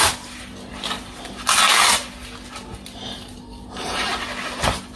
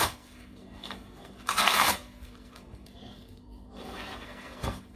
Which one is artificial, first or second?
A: second